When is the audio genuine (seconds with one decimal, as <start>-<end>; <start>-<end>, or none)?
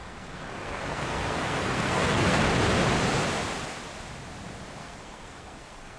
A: 2.4-4.8